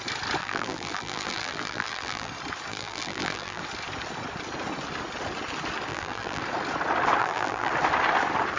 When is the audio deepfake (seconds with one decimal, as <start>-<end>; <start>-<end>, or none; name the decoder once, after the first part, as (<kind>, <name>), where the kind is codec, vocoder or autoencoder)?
0.4-2.3 (vocoder, BigVGAN v2); 2.7-3.6; 5.9-6.4; 7.2-7.7